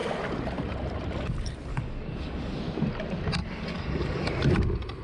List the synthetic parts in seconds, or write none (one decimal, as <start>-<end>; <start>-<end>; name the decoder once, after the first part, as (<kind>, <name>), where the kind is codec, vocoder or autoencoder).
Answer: 1.7-2.6 (codec, DAC); 3.4-4.3